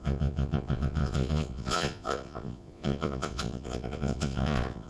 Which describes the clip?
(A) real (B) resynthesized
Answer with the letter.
B